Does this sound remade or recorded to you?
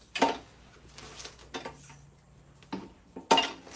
recorded